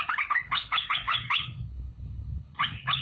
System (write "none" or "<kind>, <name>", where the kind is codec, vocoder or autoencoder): codec, HILCodec